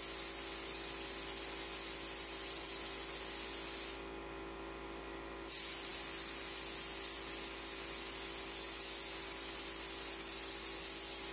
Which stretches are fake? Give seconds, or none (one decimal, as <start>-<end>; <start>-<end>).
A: none